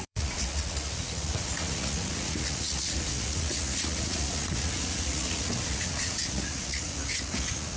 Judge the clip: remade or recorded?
remade